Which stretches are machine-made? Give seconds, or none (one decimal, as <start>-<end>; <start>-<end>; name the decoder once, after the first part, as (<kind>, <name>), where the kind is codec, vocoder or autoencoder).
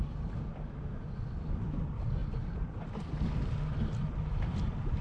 none